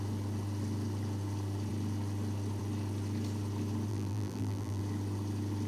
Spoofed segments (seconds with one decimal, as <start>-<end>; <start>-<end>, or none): 3.9-4.8